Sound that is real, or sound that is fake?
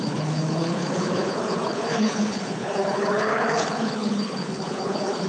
fake